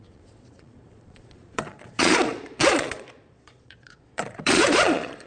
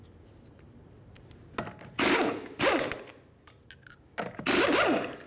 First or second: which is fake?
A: first